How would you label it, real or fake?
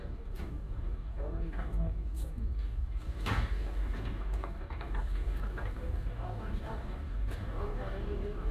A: fake